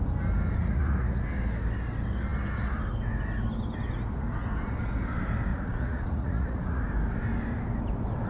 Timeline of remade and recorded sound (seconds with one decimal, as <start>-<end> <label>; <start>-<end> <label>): 0.0-0.6 recorded; 0.6-1.2 remade; 1.2-5.5 recorded; 5.5-6.8 remade; 6.8-8.3 recorded

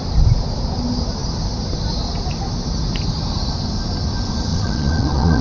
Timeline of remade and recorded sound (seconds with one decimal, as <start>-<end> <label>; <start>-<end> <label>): 0.0-4.5 recorded; 4.5-5.4 remade

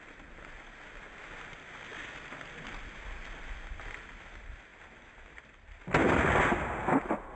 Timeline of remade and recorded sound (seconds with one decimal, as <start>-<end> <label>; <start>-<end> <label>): 0.0-7.4 recorded